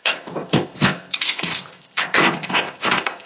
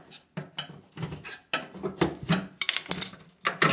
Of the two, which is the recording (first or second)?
second